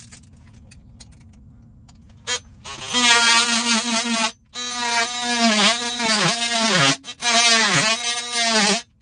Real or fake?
real